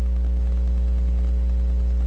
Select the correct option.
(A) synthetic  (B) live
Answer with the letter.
B